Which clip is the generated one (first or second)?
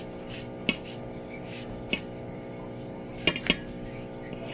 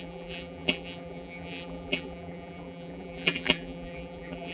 second